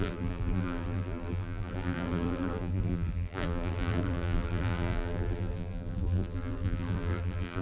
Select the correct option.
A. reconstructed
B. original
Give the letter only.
A